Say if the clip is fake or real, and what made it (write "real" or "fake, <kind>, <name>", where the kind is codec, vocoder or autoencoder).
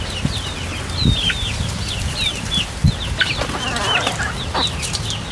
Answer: real